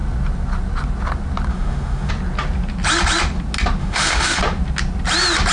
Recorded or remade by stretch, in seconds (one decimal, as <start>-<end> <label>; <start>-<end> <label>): 0.0-1.5 recorded; 1.5-2.1 remade; 2.1-3.8 recorded; 3.8-4.4 remade; 4.4-5.5 recorded